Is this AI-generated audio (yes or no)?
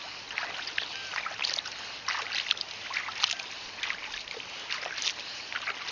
no